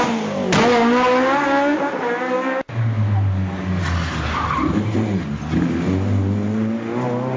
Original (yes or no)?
yes